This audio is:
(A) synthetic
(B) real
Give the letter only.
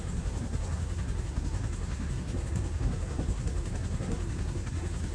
A